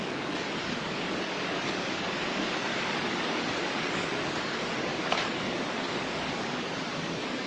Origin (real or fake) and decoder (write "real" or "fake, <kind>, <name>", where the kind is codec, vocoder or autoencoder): fake, codec, DAC